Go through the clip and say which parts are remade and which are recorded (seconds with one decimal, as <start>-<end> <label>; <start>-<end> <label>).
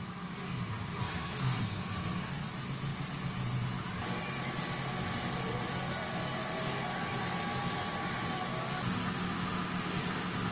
0.0-1.0 recorded; 1.0-2.5 remade; 2.5-10.5 recorded